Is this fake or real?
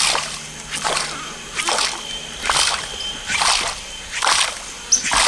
real